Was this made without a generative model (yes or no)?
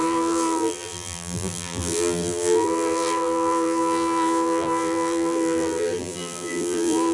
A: no